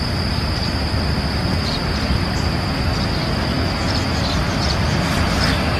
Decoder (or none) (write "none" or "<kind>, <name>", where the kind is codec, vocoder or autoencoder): none